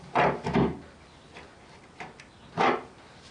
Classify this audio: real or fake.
real